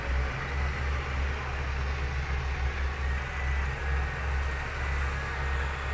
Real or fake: real